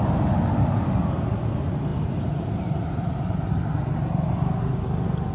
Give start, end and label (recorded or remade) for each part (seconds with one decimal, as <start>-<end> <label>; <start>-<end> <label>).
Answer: 0.0-5.3 recorded